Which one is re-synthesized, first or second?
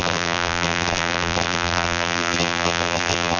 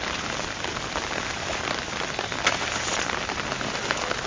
first